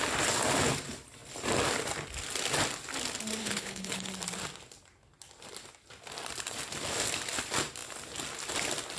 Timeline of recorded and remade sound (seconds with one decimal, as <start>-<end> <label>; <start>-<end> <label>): 0.0-3.4 recorded; 3.4-4.1 remade; 4.1-9.0 recorded